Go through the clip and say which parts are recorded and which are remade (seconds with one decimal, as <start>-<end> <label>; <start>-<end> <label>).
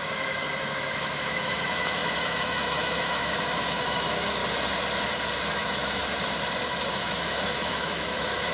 0.0-4.4 remade; 4.4-5.5 recorded; 5.5-6.0 remade; 6.0-6.9 recorded; 6.9-8.5 remade